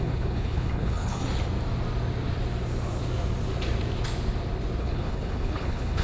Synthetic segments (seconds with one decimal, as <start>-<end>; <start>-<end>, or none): 0.0-1.2; 4.8-6.0